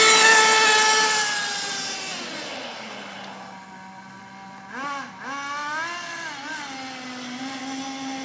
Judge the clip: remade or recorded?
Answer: recorded